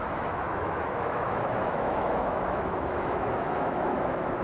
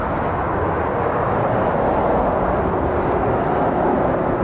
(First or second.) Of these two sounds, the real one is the second